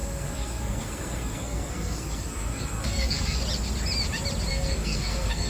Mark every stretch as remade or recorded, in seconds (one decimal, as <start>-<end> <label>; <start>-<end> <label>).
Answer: 0.0-3.4 remade; 3.4-4.5 recorded; 4.5-5.5 remade